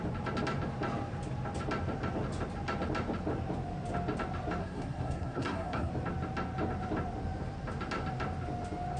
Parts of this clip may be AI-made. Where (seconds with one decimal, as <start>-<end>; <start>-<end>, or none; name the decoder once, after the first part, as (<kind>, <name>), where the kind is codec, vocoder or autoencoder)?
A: 4.6-5.9 (codec, SNAC)